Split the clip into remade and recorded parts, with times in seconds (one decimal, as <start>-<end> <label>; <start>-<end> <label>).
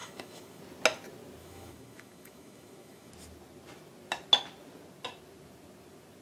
0.0-0.6 remade; 0.6-1.4 recorded; 1.4-3.1 remade; 3.1-6.2 recorded